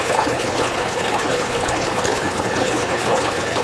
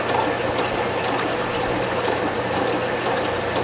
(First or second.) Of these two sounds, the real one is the second